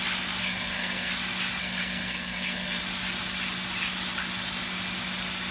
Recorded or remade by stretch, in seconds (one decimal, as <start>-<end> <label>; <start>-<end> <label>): 0.0-0.4 recorded; 0.4-1.1 remade; 1.1-1.6 recorded; 1.6-2.8 remade; 2.8-5.5 recorded